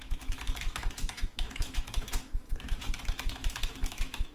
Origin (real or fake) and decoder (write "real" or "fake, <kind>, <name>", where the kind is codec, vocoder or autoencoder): fake, autoencoder, DAC-VAE